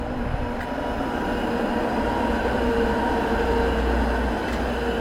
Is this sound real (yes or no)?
yes